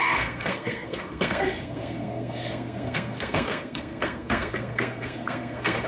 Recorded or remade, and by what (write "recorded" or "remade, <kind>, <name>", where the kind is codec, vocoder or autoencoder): remade, codec, SNAC